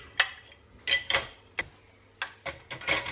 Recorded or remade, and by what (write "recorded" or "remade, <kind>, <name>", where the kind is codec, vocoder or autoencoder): recorded